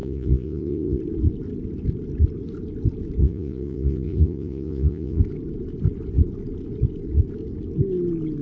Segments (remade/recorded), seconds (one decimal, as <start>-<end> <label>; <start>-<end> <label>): 0.0-1.0 remade; 1.0-3.2 recorded; 3.2-5.2 remade; 5.2-8.4 recorded